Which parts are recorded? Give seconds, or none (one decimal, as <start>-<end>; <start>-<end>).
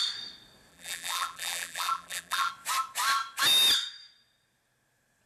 0.0-0.7; 2.5-5.3